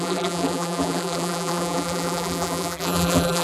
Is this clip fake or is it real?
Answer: fake